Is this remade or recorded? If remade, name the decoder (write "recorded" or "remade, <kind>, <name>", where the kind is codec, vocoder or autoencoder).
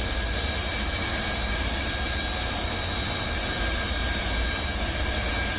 recorded